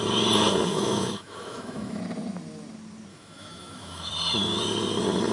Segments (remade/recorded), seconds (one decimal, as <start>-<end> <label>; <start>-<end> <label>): 0.0-0.7 recorded; 0.7-2.0 remade; 2.0-3.1 recorded; 3.1-4.1 remade; 4.1-5.3 recorded